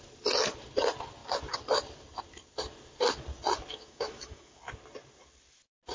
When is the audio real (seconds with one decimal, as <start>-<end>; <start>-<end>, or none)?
0.0-3.7; 4.6-5.9